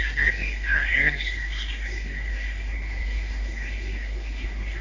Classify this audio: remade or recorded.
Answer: remade